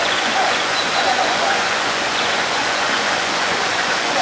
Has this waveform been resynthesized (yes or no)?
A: yes